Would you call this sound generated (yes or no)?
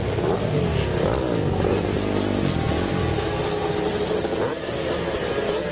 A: no